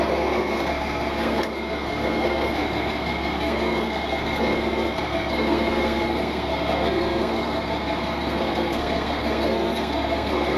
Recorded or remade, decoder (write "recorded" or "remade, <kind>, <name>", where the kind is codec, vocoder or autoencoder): remade, codec, SNAC